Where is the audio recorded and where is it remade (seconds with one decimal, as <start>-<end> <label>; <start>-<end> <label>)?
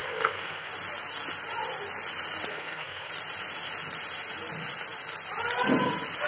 0.0-0.7 remade; 0.7-2.5 recorded; 2.5-3.1 remade; 3.1-6.3 recorded